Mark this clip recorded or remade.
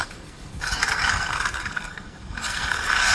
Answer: remade